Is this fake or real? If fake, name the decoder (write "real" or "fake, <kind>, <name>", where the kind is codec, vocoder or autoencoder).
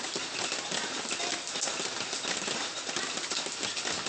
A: real